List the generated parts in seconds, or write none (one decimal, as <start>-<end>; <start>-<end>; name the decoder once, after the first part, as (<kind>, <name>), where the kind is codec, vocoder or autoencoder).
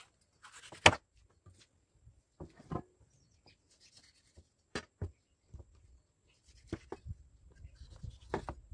none